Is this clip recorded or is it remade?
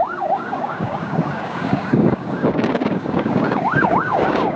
remade